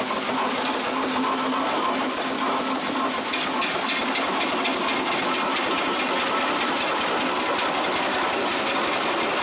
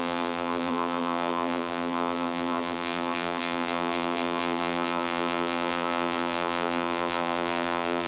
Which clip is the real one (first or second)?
first